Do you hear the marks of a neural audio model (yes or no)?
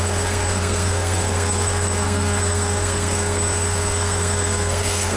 yes